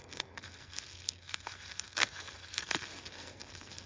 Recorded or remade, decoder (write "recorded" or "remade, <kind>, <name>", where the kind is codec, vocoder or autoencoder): remade, codec, SNAC